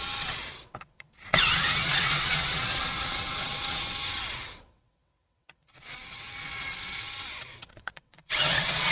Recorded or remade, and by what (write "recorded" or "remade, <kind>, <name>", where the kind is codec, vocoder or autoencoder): remade, vocoder, WaveNeXt